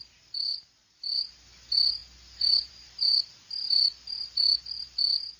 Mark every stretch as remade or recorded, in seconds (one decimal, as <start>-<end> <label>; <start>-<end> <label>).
0.0-5.4 recorded